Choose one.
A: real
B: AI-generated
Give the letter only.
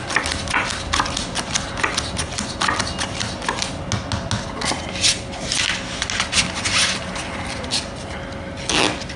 A